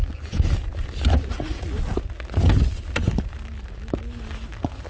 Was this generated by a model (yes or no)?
no